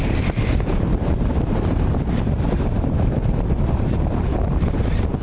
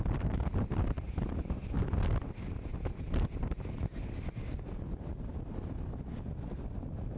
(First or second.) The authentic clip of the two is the second